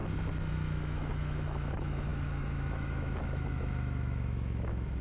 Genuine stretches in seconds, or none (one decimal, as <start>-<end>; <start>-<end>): 0.0-0.5